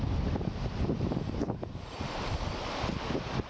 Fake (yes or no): no